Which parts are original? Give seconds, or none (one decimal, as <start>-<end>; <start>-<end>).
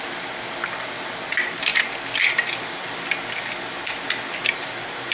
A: 0.0-5.1